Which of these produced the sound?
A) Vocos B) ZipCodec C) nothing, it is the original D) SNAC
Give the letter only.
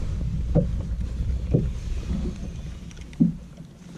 C